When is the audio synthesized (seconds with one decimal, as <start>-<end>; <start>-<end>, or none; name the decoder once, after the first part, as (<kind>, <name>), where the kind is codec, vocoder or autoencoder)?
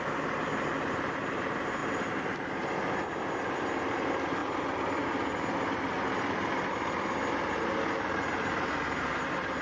1.8-2.7 (vocoder, BigVGAN v2)